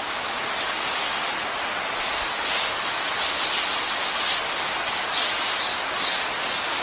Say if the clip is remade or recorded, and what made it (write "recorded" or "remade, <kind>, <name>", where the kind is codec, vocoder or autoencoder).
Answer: recorded